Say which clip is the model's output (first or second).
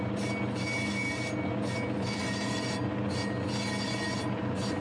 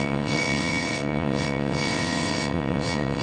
second